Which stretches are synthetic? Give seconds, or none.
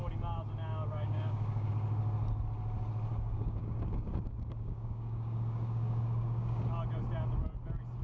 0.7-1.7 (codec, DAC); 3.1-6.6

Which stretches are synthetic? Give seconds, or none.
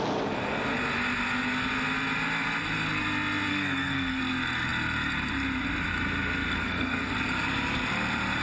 3.5-4.2 (codec, SNAC); 6.6-7.1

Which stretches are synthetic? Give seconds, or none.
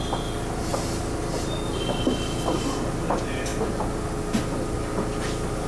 none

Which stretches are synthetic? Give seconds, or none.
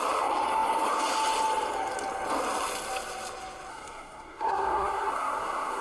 3.7-5.8 (codec, SNAC)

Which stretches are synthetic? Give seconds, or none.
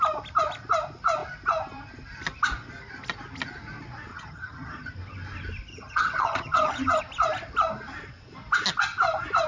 4.1-4.9 (vocoder, HiFi-GAN); 5.7-7.0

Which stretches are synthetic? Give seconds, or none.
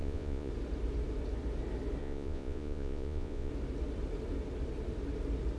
0.0-0.5 (vocoder, Vocos); 2.0-3.5